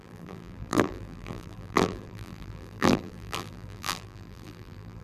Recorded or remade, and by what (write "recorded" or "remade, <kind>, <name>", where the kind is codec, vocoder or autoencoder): remade, vocoder, BigVGAN v2